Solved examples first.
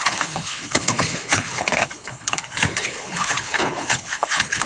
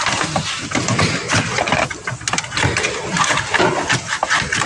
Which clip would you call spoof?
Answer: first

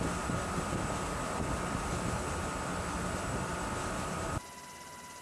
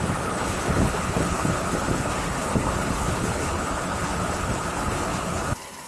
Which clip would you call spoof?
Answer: second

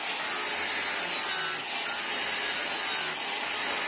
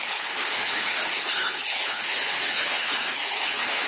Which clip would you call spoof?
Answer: second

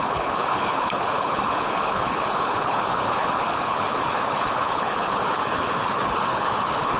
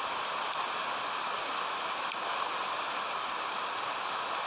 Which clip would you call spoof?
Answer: first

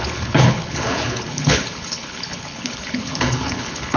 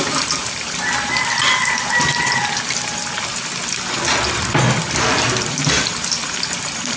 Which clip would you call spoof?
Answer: first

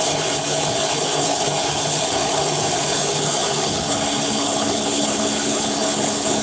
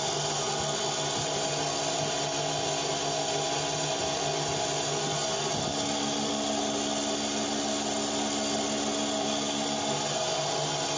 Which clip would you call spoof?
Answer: first